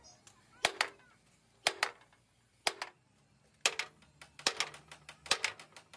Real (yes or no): yes